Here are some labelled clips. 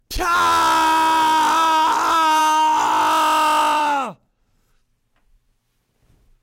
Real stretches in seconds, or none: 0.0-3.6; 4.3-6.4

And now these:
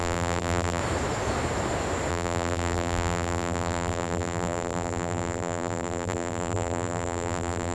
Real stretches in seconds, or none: 0.8-2.1

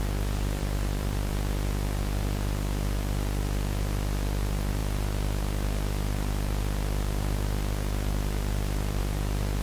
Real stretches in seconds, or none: 0.0-0.6; 1.3-9.6

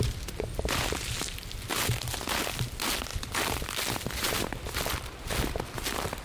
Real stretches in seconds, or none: 0.0-3.1; 3.7-6.2

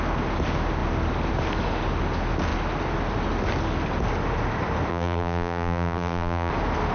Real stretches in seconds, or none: 0.0-4.9; 6.5-6.9

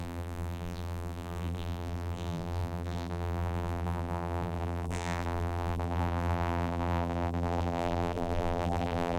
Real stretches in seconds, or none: none